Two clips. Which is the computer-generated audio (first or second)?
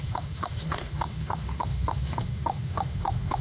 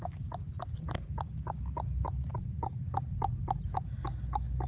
first